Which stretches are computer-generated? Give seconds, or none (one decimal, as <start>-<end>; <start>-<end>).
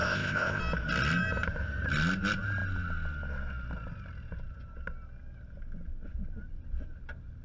0.0-0.6